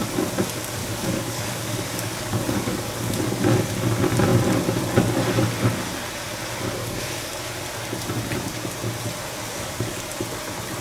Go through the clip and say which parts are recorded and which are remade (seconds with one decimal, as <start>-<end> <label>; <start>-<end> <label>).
0.0-0.8 recorded; 0.8-3.2 remade; 3.2-6.8 recorded; 6.8-7.3 remade; 7.3-9.5 recorded; 9.5-10.1 remade; 10.1-10.8 recorded